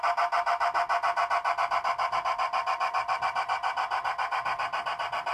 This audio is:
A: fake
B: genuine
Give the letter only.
B